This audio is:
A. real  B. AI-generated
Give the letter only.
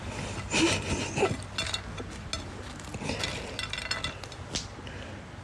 A